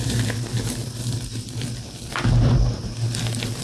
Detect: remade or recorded recorded